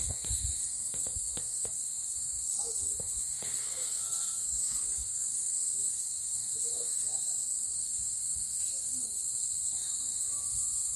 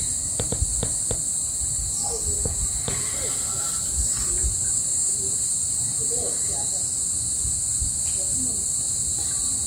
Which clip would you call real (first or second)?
second